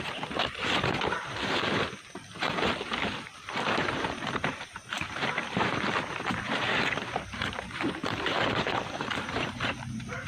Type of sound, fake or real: fake